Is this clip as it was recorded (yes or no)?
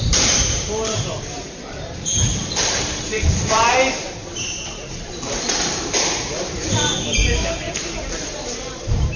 no